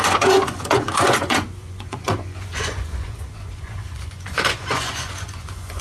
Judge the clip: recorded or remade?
remade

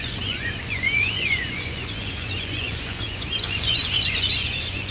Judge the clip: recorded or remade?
remade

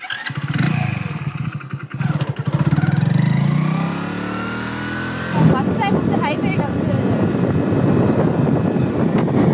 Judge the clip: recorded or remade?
recorded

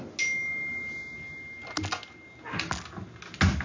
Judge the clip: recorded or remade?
recorded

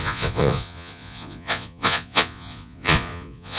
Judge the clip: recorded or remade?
remade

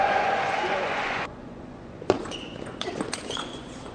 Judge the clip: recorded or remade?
remade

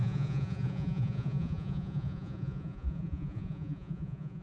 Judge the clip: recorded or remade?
remade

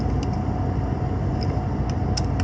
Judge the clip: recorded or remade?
recorded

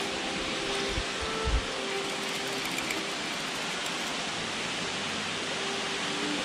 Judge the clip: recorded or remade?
recorded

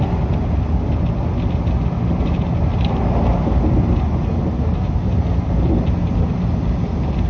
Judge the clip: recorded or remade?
recorded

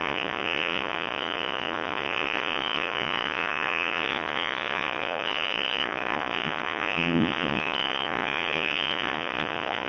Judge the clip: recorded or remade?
remade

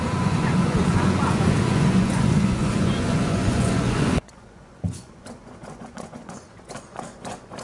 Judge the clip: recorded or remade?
remade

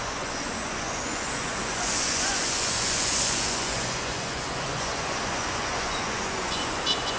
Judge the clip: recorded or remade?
remade